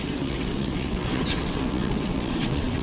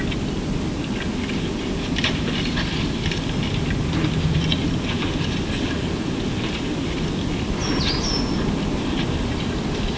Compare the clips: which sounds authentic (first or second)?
second